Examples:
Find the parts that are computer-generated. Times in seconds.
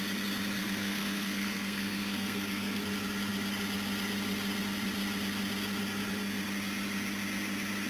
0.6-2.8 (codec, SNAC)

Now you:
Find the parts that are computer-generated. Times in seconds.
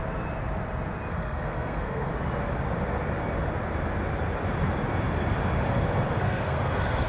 1.1-2.1 (codec, SNAC); 6.2-7.1